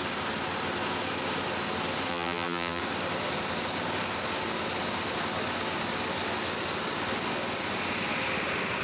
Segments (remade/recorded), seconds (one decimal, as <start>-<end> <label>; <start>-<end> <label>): 0.0-2.1 recorded; 2.1-2.8 remade; 2.8-8.8 recorded